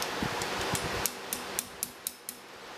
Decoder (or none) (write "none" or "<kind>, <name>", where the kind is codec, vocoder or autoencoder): none